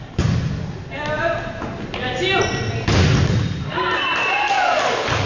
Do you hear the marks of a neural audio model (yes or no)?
no